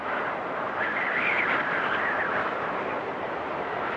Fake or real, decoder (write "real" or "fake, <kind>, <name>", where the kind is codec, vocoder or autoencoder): real